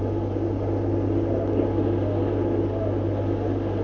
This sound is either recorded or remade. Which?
recorded